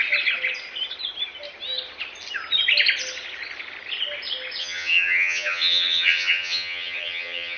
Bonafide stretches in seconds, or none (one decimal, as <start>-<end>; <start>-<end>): 0.0-4.6